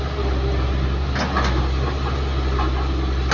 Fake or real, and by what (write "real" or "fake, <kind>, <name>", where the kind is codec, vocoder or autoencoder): real